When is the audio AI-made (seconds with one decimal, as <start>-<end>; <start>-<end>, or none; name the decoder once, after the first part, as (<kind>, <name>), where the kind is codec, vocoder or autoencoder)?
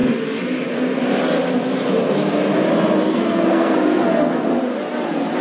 3.1-4.0 (codec, SNAC)